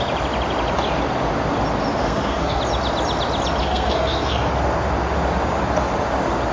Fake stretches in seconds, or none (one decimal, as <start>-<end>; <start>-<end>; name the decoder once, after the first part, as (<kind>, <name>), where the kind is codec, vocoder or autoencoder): 2.0-2.6 (codec, SNAC); 3.6-4.5